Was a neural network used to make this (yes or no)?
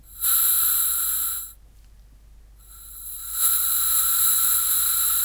no